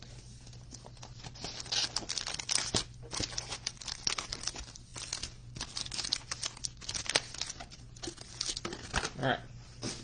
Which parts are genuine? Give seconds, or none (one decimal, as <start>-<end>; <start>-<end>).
0.0-10.0